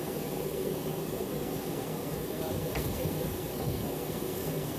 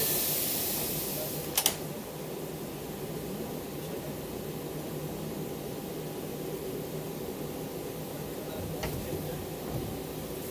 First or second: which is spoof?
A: first